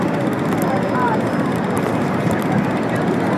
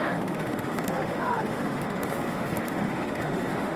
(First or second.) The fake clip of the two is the second